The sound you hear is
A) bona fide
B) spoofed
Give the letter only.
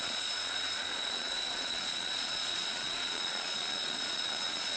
B